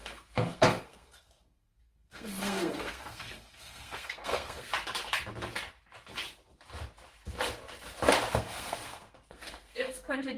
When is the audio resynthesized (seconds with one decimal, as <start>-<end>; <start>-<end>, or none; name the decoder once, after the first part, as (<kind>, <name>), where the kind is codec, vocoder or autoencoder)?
0.0-4.7 (codec, SNAC); 8.3-10.4